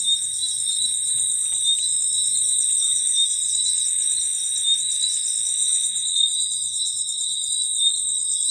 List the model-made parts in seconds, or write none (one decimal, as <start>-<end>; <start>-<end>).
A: 5.6-7.5